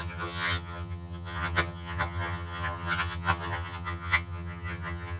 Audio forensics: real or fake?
fake